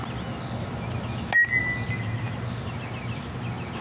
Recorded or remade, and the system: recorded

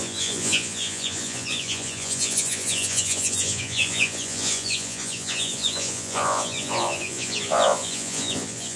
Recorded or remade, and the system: remade, vocoder, Vocos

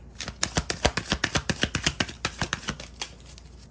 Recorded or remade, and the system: recorded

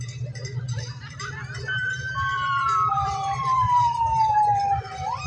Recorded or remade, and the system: remade, vocoder, BigVGAN v2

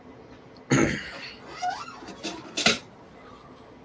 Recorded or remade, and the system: recorded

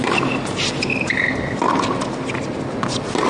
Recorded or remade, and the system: recorded